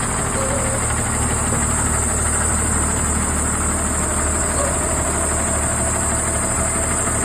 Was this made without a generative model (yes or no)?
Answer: yes